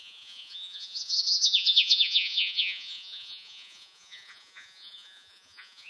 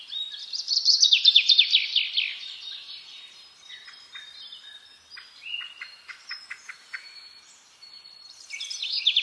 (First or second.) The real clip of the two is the second